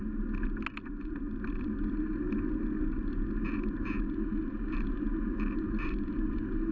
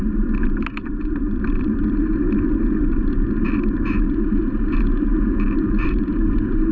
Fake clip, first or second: second